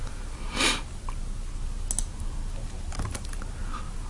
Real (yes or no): yes